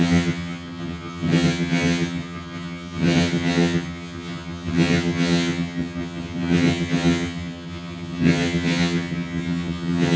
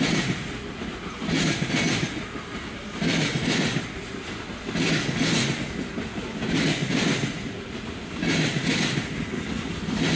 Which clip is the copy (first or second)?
first